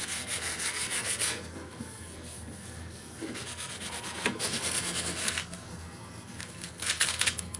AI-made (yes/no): yes